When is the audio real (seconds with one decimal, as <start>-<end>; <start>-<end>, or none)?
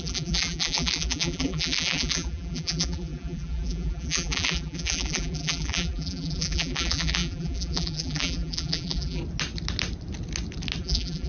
9.2-10.8